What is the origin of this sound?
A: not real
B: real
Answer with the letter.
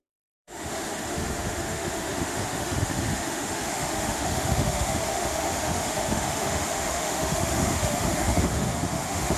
A